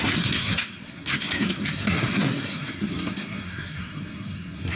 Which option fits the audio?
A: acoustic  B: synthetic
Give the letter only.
B